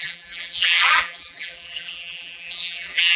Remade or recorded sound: remade